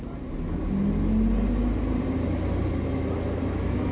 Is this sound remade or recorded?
recorded